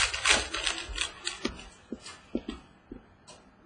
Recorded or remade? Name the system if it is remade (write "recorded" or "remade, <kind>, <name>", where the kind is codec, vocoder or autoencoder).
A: recorded